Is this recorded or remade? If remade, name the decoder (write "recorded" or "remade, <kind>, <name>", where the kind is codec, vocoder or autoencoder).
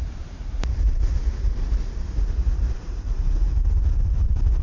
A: remade, vocoder, BigVGAN v2